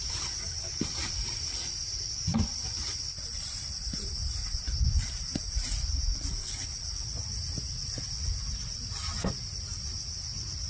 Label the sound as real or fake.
real